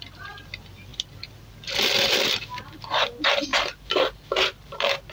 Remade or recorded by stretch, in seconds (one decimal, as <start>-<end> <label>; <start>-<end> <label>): 0.0-5.1 remade

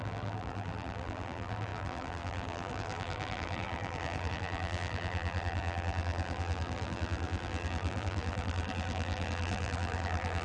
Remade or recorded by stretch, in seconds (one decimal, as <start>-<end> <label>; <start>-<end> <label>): 0.0-10.4 remade

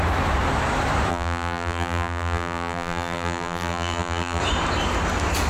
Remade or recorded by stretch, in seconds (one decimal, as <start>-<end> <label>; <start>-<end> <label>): 0.0-1.1 recorded; 1.1-4.4 remade; 4.4-5.5 recorded

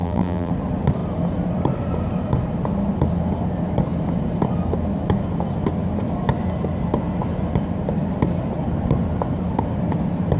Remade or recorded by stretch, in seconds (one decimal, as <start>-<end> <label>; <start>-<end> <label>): 0.0-0.5 remade; 0.5-10.4 recorded

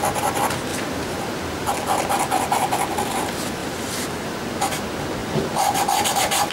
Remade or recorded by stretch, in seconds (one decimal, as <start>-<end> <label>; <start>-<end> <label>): 0.0-0.7 recorded; 0.7-1.7 remade; 1.7-3.6 recorded; 3.6-4.3 remade; 4.3-6.5 recorded

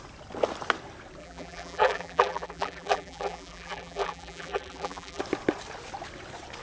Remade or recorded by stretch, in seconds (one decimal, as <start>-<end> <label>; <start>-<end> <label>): 0.0-1.2 recorded; 1.2-5.2 remade; 5.2-6.6 recorded

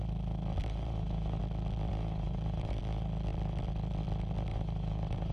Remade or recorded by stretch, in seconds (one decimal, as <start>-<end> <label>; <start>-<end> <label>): 0.0-0.6 recorded; 0.6-1.4 remade; 1.4-1.9 recorded; 1.9-2.8 remade; 2.8-4.5 recorded; 4.5-5.3 remade